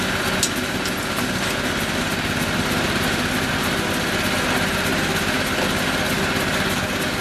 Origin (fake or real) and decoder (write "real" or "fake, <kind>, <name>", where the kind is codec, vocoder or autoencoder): real